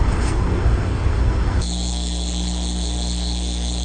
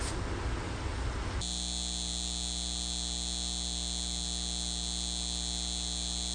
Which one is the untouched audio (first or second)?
second